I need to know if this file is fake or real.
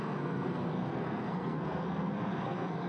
fake